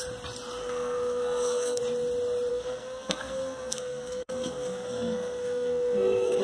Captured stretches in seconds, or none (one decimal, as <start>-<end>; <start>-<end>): 0.0-0.6; 1.8-2.5